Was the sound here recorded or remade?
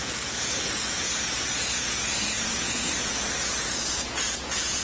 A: remade